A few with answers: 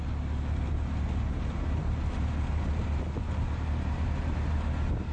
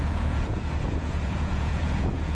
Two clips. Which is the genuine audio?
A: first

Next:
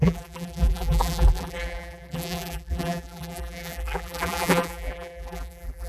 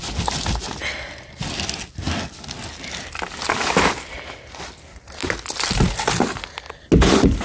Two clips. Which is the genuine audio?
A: second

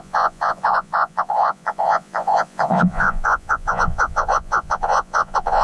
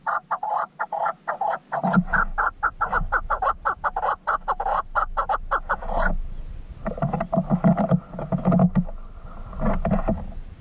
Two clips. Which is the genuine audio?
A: second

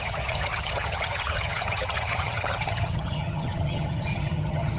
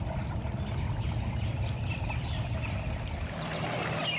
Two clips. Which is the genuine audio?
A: second